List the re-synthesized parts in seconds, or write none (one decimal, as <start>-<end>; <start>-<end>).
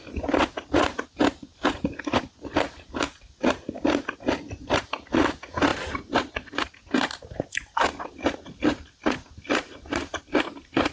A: none